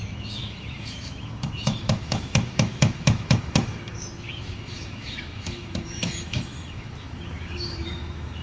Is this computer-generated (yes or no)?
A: yes